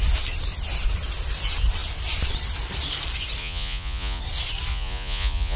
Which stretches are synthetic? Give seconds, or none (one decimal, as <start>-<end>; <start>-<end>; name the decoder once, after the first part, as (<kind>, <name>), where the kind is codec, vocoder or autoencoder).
3.4-4.2 (vocoder, Vocos); 4.7-5.6